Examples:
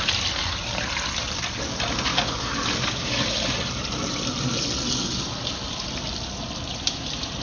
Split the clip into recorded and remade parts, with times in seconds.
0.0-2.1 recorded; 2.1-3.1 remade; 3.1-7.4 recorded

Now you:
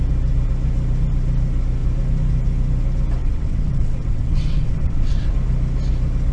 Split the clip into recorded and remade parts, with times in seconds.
0.0-3.2 recorded; 3.2-5.3 remade; 5.3-6.3 recorded

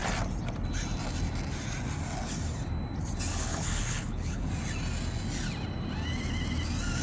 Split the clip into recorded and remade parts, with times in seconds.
0.0-3.3 recorded; 3.3-4.5 remade; 4.5-7.0 recorded

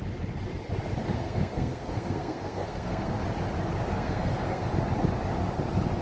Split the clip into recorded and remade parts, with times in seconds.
0.0-1.0 recorded; 1.0-3.2 remade; 3.2-3.9 recorded; 3.9-4.7 remade; 4.7-6.0 recorded

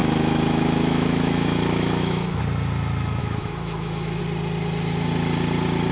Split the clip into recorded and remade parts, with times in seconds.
0.0-2.4 remade; 2.4-3.2 recorded; 3.2-4.2 remade; 4.2-5.9 recorded

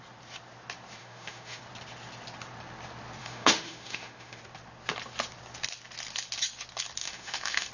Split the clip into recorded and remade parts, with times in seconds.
0.0-1.0 recorded; 1.0-1.6 remade; 1.6-3.2 recorded; 3.2-4.4 remade; 4.4-7.0 recorded; 7.0-7.7 remade